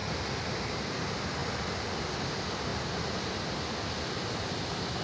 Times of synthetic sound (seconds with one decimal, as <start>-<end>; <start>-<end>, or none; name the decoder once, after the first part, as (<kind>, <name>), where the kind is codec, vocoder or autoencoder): none